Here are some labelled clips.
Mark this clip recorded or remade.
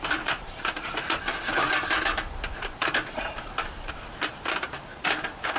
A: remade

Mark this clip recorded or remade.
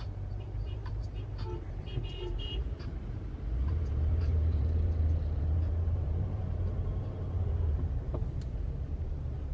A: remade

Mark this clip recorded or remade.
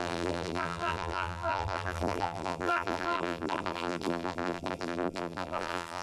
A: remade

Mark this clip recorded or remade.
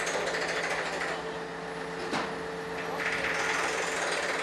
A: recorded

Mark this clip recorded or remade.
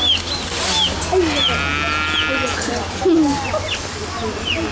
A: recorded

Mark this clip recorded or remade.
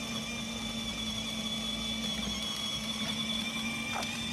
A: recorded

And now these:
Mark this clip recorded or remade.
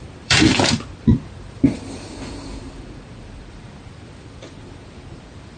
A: remade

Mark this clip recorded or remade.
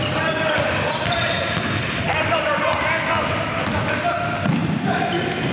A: remade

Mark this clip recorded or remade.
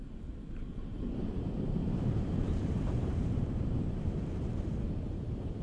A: remade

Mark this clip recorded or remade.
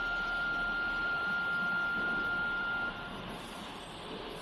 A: remade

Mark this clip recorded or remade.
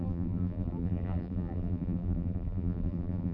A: remade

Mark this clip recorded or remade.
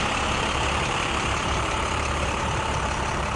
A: remade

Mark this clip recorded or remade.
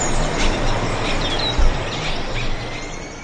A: recorded